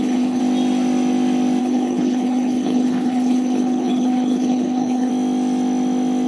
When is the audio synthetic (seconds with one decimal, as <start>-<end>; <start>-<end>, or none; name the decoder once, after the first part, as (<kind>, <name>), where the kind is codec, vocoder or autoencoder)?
0.0-0.4 (codec, HILCodec); 1.6-5.1